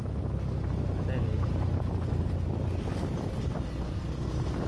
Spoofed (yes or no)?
no